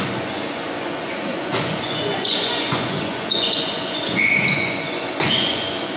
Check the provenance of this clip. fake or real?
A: fake